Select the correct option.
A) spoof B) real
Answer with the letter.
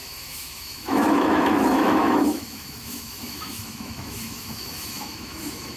A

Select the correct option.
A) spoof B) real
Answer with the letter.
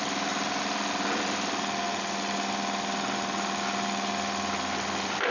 B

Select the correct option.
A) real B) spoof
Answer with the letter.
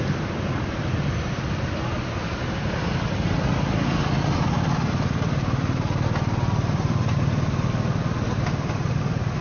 A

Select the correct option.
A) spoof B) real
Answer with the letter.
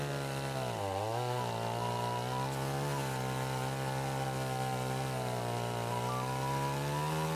B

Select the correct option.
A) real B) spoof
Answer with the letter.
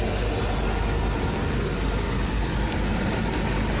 A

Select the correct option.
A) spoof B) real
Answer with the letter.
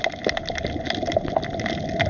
B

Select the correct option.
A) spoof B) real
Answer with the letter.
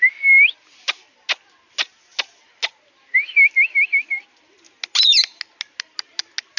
B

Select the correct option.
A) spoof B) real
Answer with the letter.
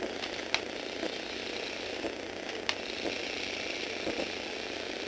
B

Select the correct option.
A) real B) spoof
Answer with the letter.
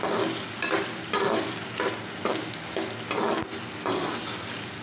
A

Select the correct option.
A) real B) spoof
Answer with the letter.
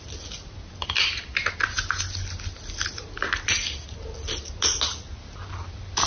A